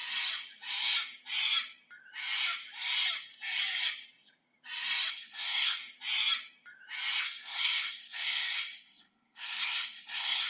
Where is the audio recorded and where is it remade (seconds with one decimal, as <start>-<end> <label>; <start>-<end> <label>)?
0.0-5.1 recorded; 5.1-5.8 remade; 5.8-7.2 recorded; 7.2-10.5 remade